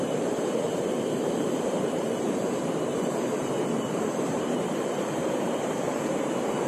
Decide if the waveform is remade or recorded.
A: remade